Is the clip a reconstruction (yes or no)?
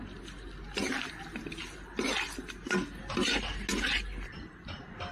no